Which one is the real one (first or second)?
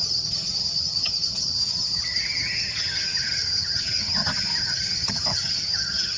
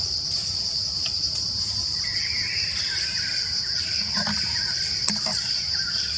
second